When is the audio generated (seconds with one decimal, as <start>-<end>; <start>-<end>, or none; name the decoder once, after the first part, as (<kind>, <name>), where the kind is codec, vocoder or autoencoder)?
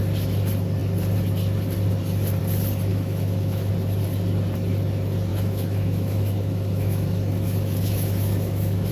2.9-3.7 (autoencoder, DAC-VAE); 5.3-8.9